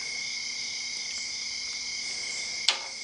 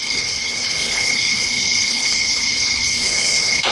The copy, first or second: second